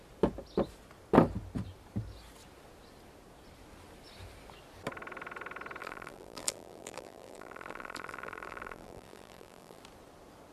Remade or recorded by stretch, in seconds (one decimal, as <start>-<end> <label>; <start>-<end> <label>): 0.0-5.8 recorded; 5.8-9.8 remade; 9.8-10.5 recorded